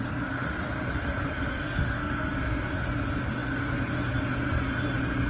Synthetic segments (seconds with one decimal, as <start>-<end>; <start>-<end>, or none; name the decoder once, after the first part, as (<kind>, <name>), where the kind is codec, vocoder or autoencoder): 1.5-2.7 (codec, SNAC)